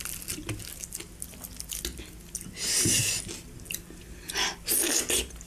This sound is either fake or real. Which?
real